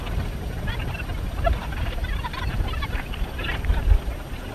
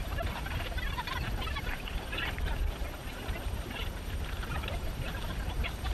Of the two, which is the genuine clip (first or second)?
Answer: first